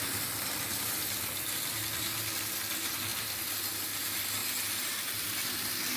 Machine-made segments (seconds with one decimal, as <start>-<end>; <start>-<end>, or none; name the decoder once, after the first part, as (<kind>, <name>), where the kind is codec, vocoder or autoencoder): none